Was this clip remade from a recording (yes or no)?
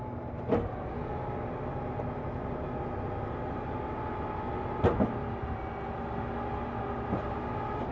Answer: no